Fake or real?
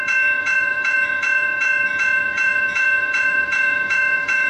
fake